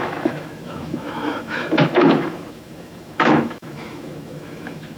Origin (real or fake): fake